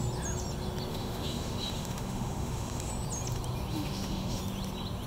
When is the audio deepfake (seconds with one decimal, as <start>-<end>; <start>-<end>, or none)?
0.9-2.9; 3.7-4.4